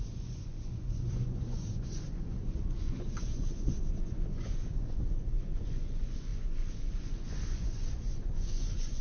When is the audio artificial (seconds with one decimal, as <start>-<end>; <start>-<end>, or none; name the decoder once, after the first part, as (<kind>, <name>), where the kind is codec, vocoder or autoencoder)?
0.0-9.0 (vocoder, Vocos)